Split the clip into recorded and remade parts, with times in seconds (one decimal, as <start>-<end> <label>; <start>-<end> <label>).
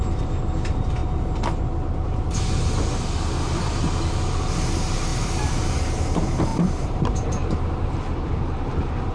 0.0-1.0 remade; 1.0-2.3 recorded; 2.3-9.1 remade